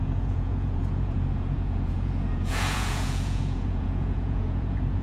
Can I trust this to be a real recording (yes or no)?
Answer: no